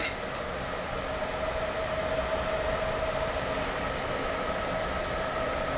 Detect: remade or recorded recorded